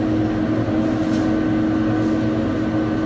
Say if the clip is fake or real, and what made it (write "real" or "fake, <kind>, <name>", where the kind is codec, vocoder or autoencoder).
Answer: real